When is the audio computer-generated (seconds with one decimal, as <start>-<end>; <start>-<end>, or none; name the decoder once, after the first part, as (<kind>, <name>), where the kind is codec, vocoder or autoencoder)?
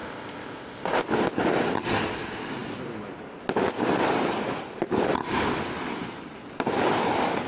0.0-1.0 (codec, ZipCodec)